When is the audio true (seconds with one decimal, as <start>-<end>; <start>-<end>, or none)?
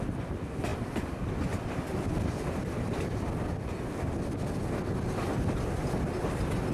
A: 0.0-6.7